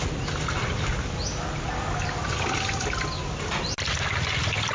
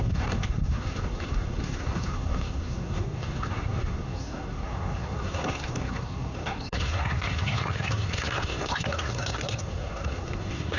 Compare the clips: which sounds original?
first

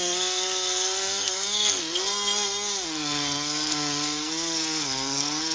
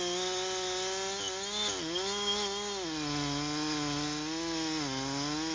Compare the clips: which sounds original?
second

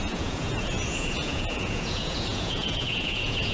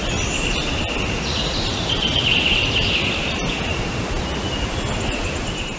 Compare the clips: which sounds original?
second